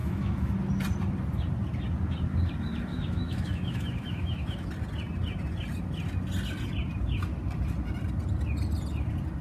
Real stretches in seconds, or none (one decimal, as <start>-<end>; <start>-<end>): 0.5-2.9; 4.7-9.4